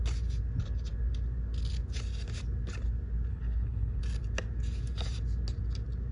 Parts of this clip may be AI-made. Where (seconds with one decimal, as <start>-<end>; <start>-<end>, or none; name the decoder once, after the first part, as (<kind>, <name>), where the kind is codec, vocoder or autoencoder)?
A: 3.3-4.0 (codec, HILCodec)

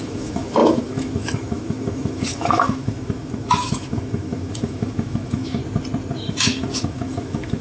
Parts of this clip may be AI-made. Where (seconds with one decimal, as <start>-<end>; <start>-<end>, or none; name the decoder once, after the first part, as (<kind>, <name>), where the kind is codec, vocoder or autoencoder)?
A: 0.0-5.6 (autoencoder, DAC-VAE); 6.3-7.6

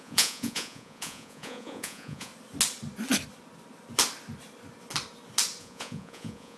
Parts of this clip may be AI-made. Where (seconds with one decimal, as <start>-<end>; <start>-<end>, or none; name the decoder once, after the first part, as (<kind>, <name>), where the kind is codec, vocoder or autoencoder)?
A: 0.0-2.3 (vocoder, Vocos); 5.6-6.6

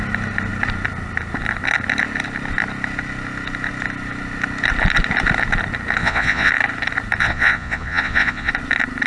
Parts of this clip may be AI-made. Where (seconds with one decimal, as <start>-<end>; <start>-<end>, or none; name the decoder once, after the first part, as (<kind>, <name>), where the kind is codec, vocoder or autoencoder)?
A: 6.0-6.5 (vocoder, Vocos); 7.2-8.5

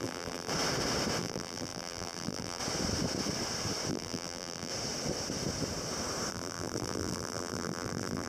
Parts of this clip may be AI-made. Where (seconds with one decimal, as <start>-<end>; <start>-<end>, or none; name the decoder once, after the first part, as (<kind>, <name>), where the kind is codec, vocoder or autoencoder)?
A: 0.0-0.5 (vocoder, BigVGAN v2); 1.2-2.6; 3.9-4.7; 6.3-8.3

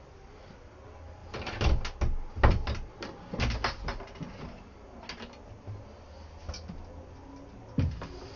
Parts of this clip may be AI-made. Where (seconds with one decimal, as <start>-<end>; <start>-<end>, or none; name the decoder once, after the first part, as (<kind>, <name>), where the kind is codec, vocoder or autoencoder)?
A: 1.2-1.8 (vocoder, BigVGAN v2)

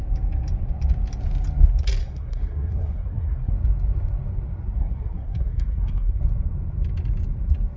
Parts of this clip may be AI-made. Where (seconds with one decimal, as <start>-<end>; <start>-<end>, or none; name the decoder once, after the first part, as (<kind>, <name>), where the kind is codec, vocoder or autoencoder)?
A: 2.0-3.5 (codec, SNAC); 4.8-6.2

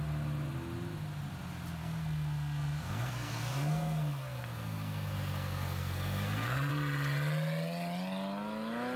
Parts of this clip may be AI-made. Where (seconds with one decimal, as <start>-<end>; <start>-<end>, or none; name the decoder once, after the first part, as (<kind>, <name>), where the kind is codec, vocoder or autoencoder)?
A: 1.8-6.7 (codec, SNAC)